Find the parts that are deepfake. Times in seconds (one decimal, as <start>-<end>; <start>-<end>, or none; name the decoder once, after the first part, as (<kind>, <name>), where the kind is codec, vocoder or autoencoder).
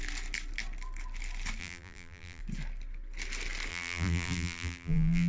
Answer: 1.6-2.4 (vocoder, BigVGAN v2); 3.7-5.3